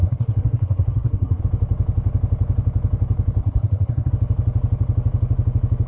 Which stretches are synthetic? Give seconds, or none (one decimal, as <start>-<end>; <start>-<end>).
0.0-1.4; 3.4-4.1